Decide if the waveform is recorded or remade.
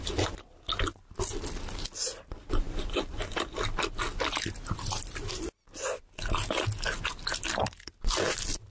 recorded